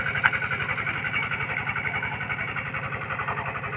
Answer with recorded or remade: recorded